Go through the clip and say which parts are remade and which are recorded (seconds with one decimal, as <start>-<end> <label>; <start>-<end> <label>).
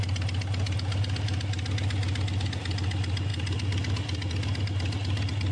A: 0.0-5.5 recorded